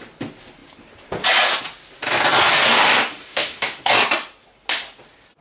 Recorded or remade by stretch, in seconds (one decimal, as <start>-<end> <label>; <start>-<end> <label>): 0.0-3.2 recorded; 3.2-3.9 remade; 3.9-5.4 recorded